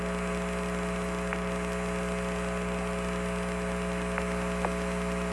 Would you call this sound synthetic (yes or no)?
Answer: no